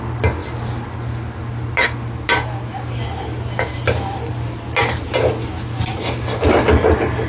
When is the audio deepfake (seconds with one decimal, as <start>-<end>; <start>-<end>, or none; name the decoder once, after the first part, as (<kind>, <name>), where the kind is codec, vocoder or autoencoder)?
none